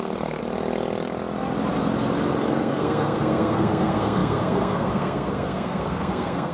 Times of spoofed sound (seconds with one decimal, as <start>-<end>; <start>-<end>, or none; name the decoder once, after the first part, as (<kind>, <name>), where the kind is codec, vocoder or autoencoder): 0.0-0.4 (codec, SNAC); 2.5-6.5